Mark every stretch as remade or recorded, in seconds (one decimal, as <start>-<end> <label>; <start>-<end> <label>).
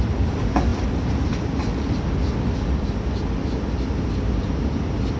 0.0-5.2 recorded